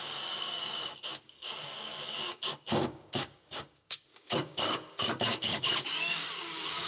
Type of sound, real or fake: fake